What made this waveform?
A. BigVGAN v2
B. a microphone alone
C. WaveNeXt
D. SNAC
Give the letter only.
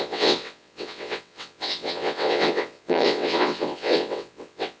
C